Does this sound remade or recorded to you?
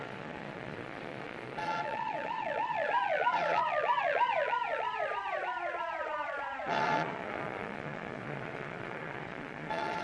remade